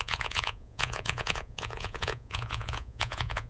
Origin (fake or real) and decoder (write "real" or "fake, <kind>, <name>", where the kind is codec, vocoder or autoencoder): fake, vocoder, Vocos